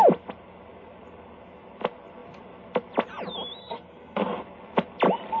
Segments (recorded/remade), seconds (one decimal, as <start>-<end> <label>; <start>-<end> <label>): 0.0-3.6 recorded; 3.6-4.4 remade; 4.4-5.4 recorded